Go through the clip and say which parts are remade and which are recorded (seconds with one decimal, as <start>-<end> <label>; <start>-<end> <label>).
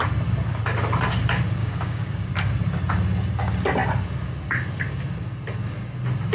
0.0-1.6 recorded; 1.6-2.3 remade; 2.3-6.3 recorded